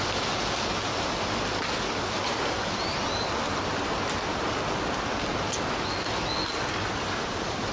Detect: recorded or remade recorded